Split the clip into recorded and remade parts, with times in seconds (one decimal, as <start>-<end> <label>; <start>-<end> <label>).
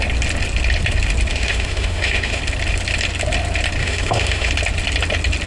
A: 0.0-1.3 recorded; 1.3-2.4 remade; 2.4-3.8 recorded; 3.8-4.5 remade; 4.5-5.5 recorded